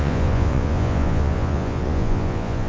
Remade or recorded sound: remade